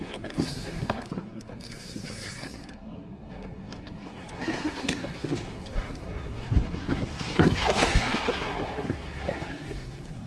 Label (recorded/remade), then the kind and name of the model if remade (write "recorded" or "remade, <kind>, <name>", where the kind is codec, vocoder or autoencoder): remade, codec, SNAC